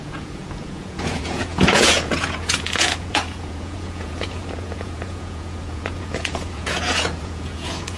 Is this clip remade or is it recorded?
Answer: remade